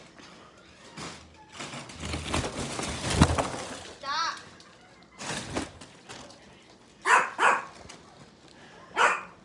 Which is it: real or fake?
real